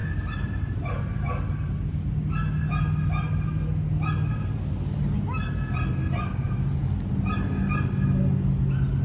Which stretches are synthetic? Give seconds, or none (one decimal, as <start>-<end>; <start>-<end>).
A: none